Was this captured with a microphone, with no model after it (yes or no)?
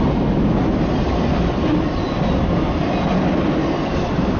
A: yes